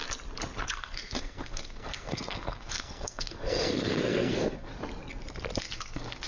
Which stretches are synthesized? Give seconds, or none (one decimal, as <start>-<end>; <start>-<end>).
0.7-4.7; 5.6-6.3